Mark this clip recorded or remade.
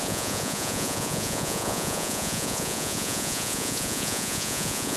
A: remade